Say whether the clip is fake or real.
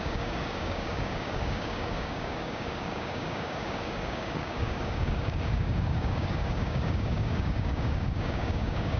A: fake